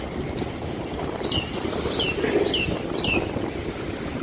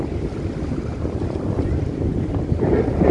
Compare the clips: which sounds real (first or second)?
second